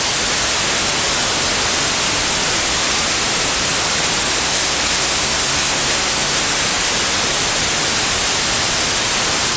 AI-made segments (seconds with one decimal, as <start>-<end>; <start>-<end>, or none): 4.4-6.4